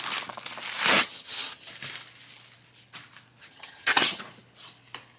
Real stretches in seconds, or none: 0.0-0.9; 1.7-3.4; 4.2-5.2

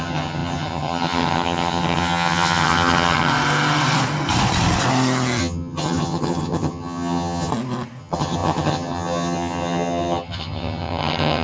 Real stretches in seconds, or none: 3.3-5.4; 7.5-8.0